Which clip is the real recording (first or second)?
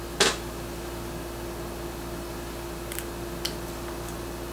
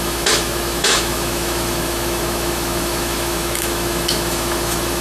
first